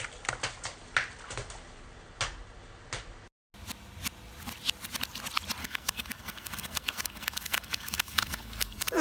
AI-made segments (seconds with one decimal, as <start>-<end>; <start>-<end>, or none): 5.6-9.0